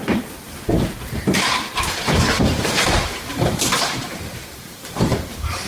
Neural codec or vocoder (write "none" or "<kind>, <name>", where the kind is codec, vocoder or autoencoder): vocoder, BigVGAN v2